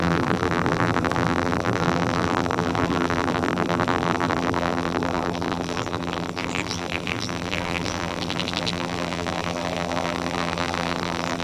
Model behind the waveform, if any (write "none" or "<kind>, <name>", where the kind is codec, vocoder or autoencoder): vocoder, BigVGAN v2